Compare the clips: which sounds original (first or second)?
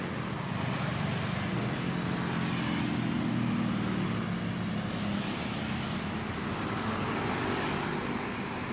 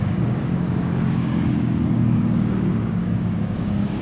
first